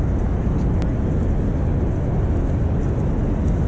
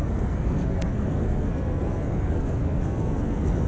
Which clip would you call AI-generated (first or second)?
second